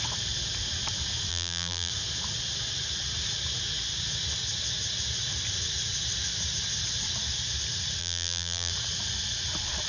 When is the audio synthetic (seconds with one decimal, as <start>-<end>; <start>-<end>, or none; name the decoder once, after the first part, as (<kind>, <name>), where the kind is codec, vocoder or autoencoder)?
1.3-1.9 (vocoder, BigVGAN v2); 8.0-8.7